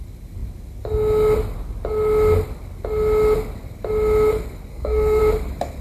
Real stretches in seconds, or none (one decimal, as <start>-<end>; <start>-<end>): 0.0-4.7; 5.2-5.8